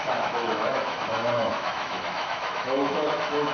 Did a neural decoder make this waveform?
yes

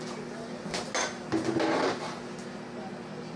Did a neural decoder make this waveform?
no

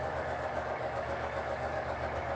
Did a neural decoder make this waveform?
yes